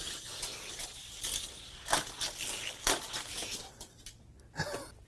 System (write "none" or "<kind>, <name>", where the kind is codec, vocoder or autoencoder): none